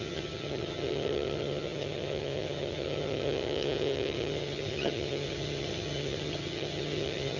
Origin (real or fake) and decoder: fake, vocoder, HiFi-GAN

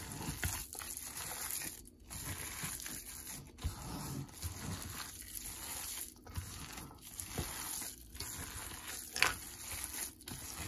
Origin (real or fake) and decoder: real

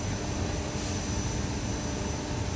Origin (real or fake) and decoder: real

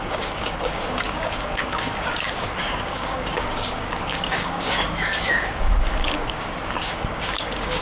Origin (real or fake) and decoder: fake, codec, DAC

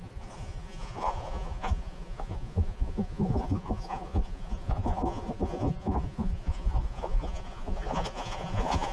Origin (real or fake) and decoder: fake, vocoder, Vocos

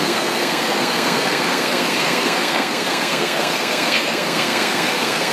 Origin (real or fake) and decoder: fake, codec, SNAC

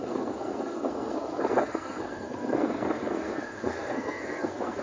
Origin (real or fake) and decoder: fake, codec, SNAC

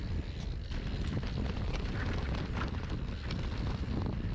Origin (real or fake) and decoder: real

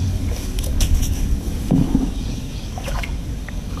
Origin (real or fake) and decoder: fake, codec, DAC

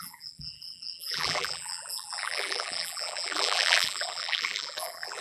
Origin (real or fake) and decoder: fake, vocoder, BigVGAN v2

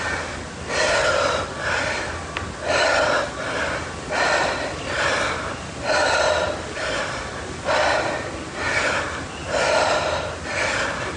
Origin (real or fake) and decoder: real